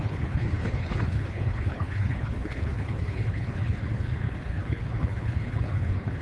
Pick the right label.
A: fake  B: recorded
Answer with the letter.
A